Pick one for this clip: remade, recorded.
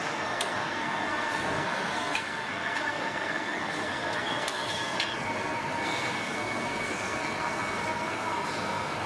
remade